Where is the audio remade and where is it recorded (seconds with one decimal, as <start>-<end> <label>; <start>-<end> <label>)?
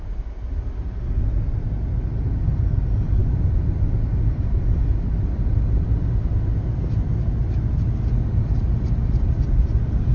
0.0-10.1 recorded